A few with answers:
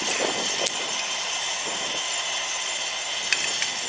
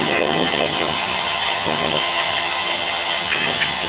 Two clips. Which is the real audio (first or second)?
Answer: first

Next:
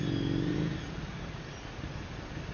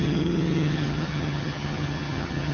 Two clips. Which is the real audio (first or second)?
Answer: first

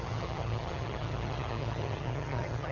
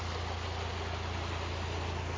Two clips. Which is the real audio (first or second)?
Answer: second